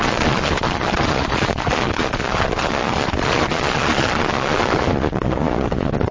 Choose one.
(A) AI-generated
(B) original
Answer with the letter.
A